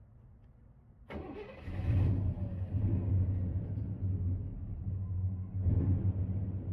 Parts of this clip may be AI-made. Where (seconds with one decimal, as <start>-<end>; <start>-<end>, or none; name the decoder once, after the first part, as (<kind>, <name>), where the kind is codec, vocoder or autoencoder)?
4.8-5.7 (codec, SNAC)